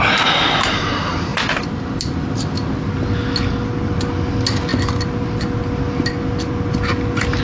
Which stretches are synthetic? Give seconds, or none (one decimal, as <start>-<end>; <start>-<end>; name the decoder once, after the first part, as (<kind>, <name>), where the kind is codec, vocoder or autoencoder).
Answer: none